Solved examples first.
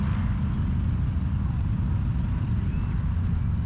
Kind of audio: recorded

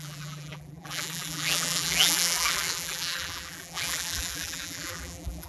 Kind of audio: remade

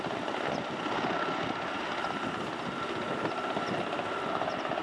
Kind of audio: recorded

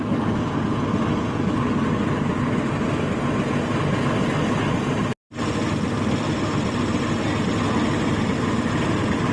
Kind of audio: recorded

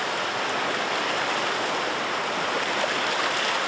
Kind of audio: recorded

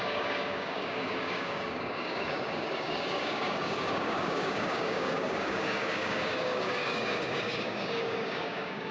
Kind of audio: remade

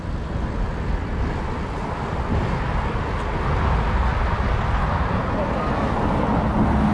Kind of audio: recorded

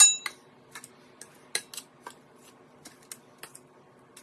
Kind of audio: recorded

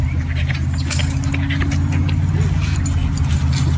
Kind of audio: recorded